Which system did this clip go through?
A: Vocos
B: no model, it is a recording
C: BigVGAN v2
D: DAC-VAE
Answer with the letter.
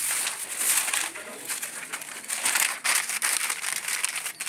B